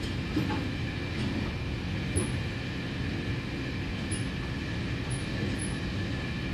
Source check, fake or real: real